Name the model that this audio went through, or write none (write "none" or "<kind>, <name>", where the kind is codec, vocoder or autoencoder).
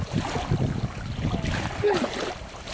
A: none